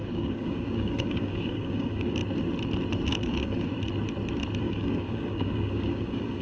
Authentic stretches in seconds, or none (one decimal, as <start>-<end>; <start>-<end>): 2.2-3.1; 3.7-4.6